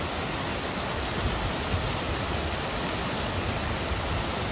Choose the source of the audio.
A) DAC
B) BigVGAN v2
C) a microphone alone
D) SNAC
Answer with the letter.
C